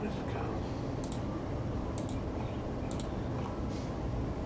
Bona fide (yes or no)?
yes